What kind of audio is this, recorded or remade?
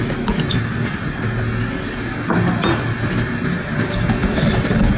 recorded